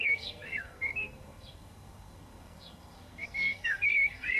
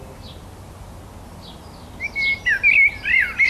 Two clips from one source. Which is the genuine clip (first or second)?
second